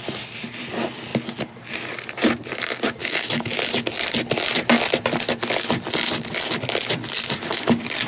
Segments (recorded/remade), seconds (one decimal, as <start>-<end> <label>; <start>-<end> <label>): 0.0-3.0 recorded; 3.0-3.6 remade; 3.6-8.1 recorded